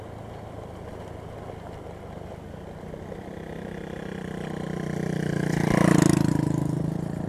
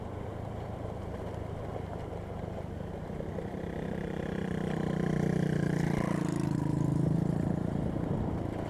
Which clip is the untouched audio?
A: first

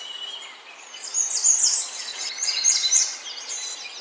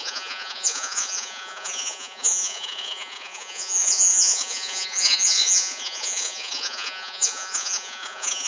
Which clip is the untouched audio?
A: first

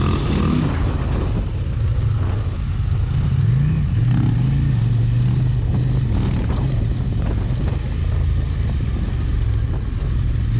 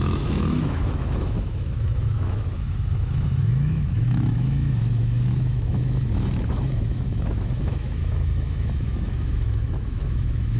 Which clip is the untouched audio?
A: first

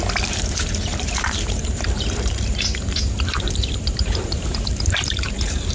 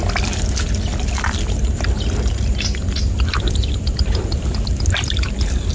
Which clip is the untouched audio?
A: second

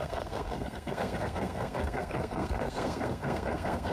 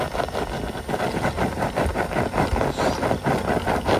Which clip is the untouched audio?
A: second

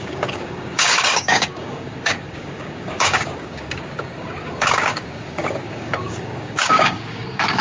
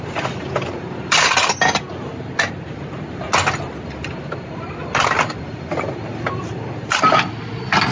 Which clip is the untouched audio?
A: second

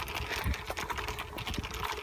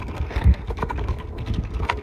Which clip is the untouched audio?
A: first